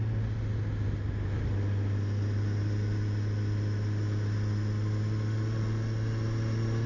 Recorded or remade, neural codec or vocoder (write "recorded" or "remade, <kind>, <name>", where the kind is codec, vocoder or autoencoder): recorded